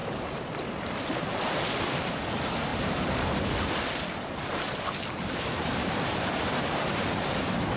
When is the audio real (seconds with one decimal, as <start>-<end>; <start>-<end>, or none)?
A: 2.3-2.7